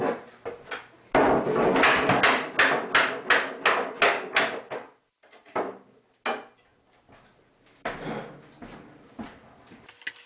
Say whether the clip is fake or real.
real